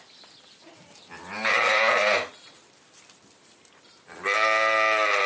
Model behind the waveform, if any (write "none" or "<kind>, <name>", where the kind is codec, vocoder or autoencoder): none